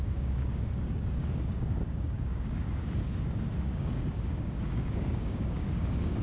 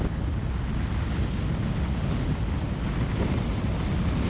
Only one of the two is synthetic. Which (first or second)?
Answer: first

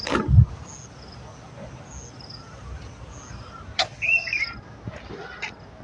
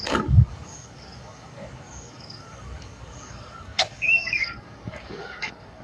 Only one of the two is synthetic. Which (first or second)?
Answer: second